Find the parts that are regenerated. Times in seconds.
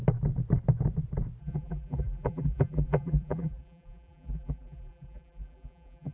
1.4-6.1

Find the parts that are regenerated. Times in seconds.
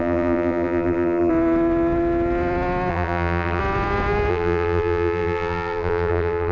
0.0-1.3; 2.9-3.6; 4.3-6.5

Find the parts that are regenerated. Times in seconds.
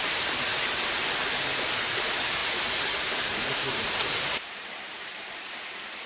0.0-0.5; 1.2-6.1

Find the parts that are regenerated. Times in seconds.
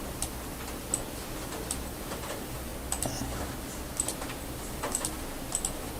none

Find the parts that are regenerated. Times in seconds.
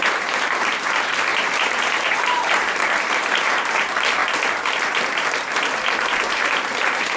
0.0-4.2; 5.9-7.2